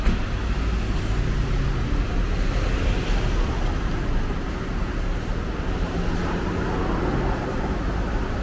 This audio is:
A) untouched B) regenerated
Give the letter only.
A